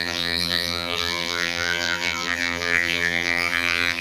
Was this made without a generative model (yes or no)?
no